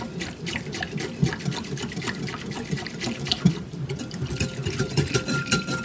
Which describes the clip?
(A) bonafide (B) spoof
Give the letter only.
A